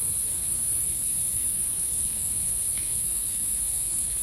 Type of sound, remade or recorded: remade